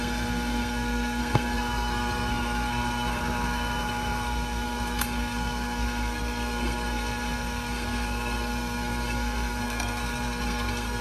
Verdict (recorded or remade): remade